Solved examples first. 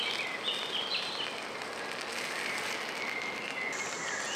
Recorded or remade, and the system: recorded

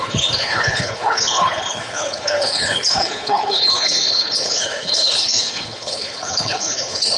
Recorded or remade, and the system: remade, codec, HILCodec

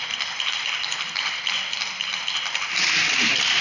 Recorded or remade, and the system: recorded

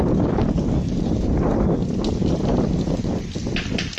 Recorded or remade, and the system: recorded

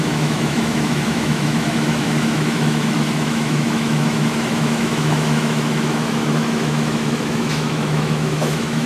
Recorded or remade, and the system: remade, autoencoder, DAC-VAE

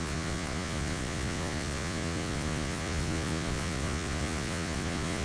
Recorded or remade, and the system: remade, vocoder, Vocos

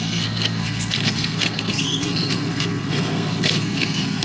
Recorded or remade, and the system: remade, codec, SNAC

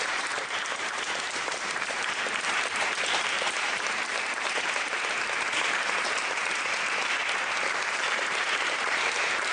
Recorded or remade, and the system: remade, vocoder, BigVGAN v2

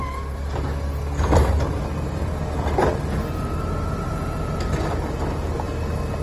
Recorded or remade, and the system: recorded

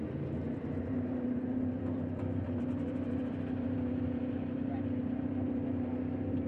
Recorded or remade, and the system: remade, vocoder, BigVGAN v2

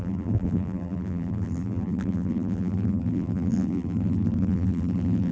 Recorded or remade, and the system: remade, vocoder, BigVGAN v2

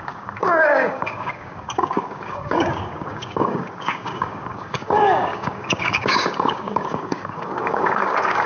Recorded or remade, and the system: remade, codec, DAC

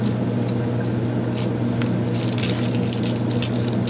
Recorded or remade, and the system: recorded